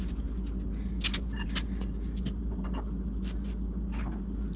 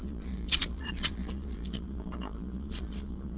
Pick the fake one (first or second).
second